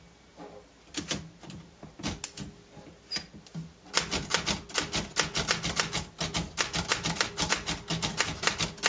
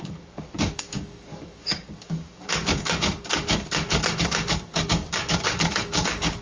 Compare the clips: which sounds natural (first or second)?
first